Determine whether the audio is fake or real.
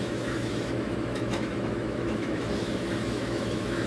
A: fake